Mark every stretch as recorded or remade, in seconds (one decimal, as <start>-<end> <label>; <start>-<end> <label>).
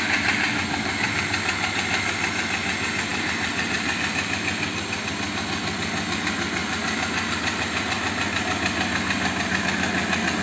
0.0-10.4 recorded